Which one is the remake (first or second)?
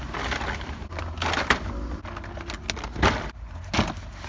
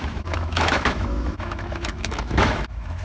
second